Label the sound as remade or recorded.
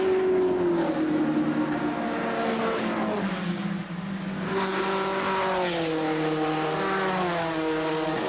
recorded